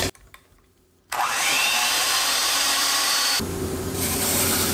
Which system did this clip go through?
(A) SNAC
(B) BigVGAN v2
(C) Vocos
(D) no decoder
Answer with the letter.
B